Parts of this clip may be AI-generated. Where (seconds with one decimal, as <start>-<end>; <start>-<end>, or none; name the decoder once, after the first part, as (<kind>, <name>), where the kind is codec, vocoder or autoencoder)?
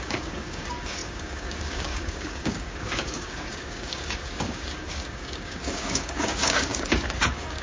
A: 0.0-7.6 (codec, DAC)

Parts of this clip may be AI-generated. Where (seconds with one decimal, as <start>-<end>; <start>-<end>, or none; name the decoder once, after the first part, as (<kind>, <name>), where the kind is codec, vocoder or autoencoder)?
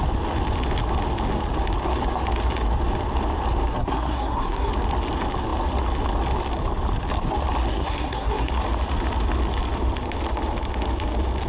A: 3.7-4.7 (codec, SNAC); 7.7-8.5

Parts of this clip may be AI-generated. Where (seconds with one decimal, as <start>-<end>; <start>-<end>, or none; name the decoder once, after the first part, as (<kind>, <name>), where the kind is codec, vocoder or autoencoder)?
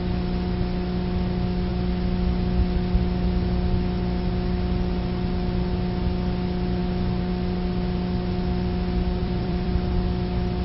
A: 9.2-9.7 (vocoder, BigVGAN v2)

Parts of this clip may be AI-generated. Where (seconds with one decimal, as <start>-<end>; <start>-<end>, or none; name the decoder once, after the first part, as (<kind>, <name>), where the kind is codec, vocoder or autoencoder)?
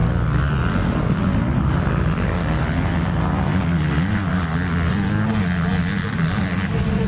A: 6.0-7.1 (vocoder, BigVGAN v2)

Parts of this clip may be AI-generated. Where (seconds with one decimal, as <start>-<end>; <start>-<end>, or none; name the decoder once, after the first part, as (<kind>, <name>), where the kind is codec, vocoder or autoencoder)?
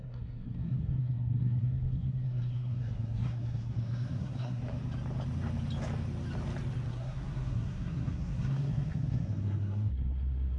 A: 0.0-4.6 (codec, SNAC); 6.9-10.6